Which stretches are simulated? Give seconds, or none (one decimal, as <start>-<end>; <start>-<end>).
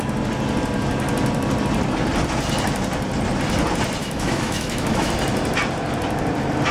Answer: 4.0-5.1